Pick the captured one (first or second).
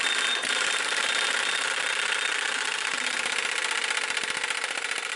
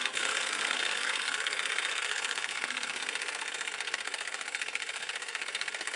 first